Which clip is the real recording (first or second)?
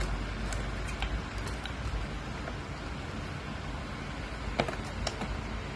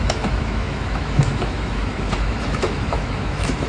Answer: first